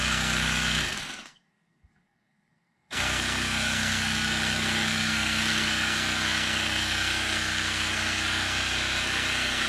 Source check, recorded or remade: remade